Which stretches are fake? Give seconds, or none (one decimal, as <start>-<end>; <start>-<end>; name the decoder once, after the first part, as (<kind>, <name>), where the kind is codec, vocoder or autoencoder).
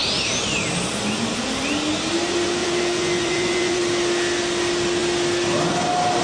2.6-3.8 (vocoder, Vocos)